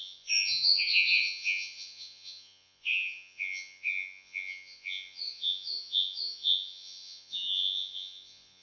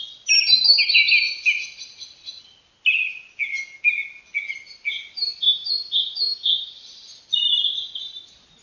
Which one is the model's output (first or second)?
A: first